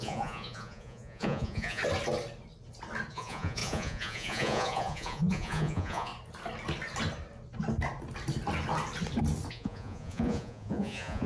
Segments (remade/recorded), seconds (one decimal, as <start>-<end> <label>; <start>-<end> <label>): 0.0-1.8 remade; 1.8-3.1 recorded; 3.1-6.1 remade; 6.1-9.5 recorded; 9.5-11.3 remade

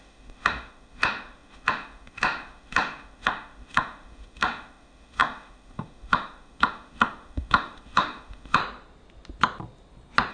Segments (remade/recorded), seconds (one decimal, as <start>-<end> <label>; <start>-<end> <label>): 0.0-8.6 remade; 8.6-10.3 recorded

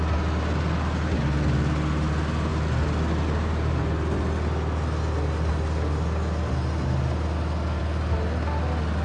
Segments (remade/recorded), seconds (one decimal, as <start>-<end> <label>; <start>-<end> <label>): 0.0-9.0 recorded

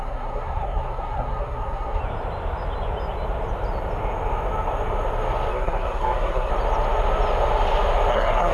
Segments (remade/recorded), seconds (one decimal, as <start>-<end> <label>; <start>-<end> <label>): 0.0-2.0 remade; 2.0-5.5 recorded; 5.5-6.5 remade; 6.5-8.1 recorded; 8.1-8.5 remade

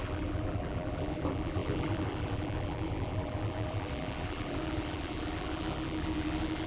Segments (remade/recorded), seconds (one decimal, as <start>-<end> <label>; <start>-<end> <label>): 0.0-6.7 remade

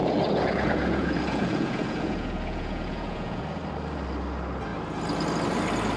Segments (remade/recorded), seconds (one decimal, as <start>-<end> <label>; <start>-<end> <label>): 0.0-3.6 remade; 3.6-6.0 recorded

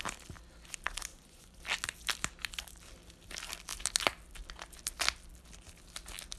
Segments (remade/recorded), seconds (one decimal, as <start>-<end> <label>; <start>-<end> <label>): 0.0-1.1 recorded; 1.1-1.6 remade; 1.6-6.4 recorded

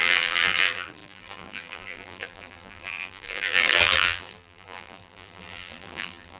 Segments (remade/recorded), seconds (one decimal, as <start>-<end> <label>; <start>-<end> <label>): 0.0-6.4 remade